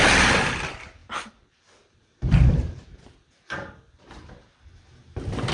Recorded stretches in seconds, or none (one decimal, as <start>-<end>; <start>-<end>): 0.0-1.0; 4.3-5.5